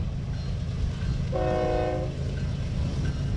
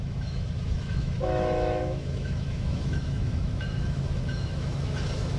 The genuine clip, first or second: first